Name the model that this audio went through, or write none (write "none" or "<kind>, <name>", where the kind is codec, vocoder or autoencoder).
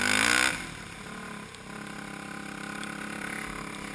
none